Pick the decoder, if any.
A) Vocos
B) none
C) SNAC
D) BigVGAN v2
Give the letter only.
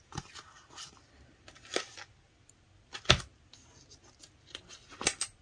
B